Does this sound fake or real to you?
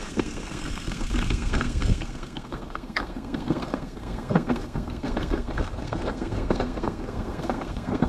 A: fake